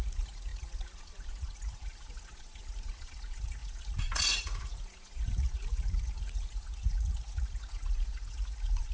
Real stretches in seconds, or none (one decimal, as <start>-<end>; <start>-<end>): none